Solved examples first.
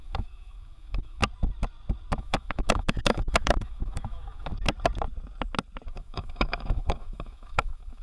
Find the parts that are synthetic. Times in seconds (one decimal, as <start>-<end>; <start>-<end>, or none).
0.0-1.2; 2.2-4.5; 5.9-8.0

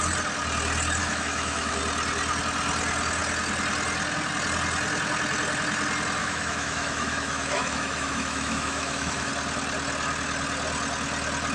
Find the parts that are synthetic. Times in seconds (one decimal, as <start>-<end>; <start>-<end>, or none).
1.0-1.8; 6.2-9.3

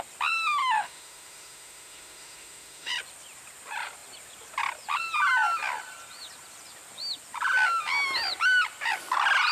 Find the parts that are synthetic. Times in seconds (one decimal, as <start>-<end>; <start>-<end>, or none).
0.6-2.9

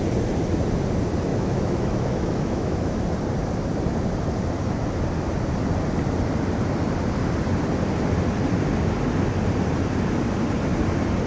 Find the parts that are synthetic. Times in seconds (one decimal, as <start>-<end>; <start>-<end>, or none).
1.3-3.0

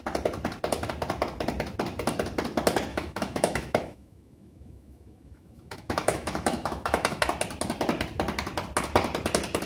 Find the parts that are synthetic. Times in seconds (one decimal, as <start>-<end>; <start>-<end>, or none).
2.9-7.2

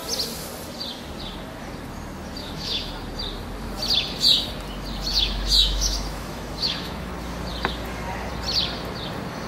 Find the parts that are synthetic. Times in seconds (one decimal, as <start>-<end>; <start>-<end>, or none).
2.4-2.9; 5.1-7.1

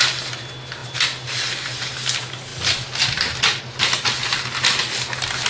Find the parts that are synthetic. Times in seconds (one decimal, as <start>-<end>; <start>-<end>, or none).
none